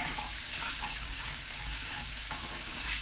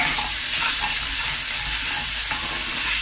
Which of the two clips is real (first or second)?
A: second